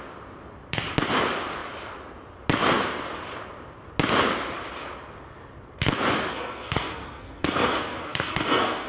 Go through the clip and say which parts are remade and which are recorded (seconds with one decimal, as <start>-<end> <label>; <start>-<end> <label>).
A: 0.0-6.3 recorded; 6.3-8.9 remade